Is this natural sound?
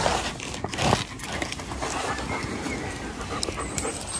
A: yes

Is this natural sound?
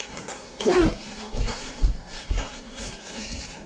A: no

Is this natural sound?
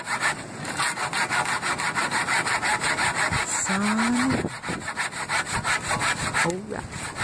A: yes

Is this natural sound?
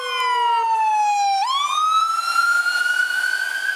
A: yes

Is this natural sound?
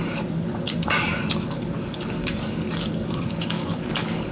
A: no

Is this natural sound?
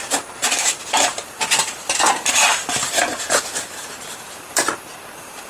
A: no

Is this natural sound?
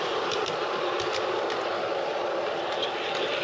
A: no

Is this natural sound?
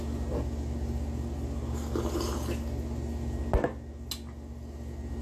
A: yes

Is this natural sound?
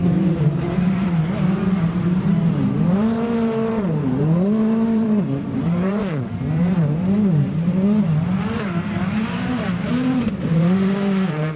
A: no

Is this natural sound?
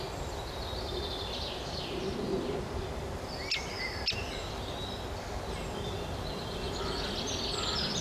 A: yes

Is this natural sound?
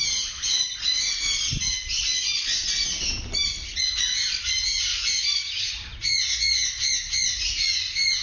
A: yes